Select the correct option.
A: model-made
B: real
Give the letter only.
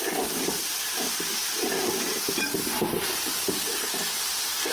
B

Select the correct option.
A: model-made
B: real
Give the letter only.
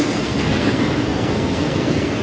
A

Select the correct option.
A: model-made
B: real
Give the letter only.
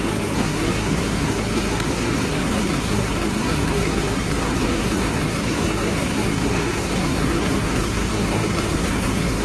A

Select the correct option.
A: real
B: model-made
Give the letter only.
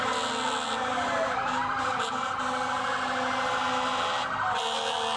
A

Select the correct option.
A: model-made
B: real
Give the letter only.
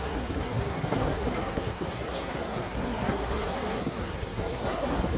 A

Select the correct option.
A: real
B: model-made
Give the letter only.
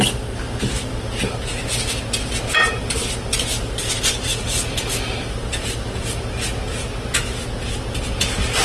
A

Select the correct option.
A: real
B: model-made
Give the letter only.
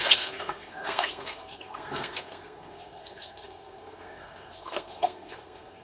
B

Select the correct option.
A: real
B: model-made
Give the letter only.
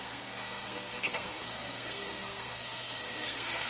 B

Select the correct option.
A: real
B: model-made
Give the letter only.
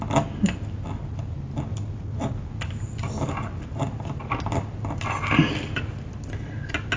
A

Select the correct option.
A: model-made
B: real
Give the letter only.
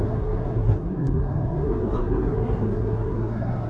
A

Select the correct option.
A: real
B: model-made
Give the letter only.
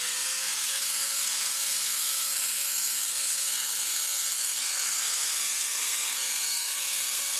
B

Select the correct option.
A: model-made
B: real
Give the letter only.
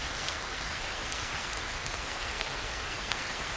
A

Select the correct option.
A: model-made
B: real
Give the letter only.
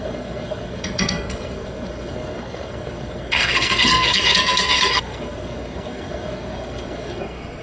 A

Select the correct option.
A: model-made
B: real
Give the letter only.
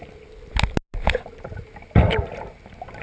B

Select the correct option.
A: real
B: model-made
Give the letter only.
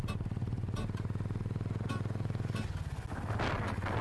A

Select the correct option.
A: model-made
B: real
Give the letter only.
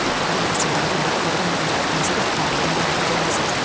B